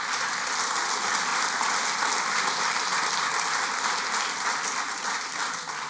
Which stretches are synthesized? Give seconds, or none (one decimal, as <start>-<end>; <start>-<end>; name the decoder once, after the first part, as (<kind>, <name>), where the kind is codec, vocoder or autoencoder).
none